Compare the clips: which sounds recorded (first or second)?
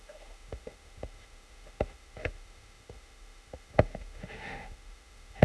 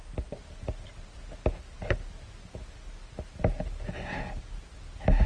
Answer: second